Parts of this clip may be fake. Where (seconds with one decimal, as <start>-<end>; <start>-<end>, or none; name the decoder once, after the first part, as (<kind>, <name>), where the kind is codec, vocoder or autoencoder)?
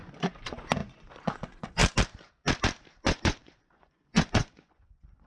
0.0-1.8 (vocoder, Vocos); 3.0-5.3